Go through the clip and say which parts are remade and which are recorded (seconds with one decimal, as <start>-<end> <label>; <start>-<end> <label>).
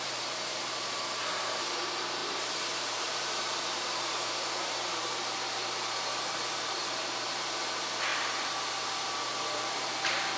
0.0-10.4 remade